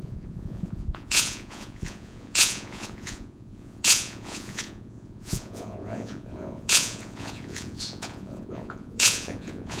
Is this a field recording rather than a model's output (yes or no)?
no